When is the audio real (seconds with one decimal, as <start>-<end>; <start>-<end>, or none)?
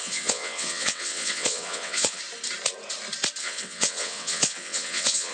2.2-3.4